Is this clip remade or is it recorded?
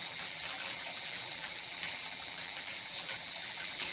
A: remade